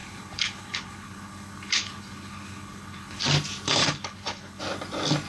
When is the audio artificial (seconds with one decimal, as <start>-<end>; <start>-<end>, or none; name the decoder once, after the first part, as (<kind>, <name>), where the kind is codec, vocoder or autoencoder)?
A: 0.0-3.2 (codec, HILCodec); 3.8-4.6